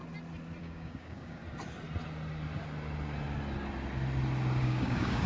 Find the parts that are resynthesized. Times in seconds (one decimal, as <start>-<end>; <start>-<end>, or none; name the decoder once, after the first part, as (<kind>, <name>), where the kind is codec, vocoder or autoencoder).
0.6-1.4 (codec, DAC); 4.6-5.3